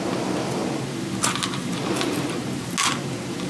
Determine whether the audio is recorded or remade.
recorded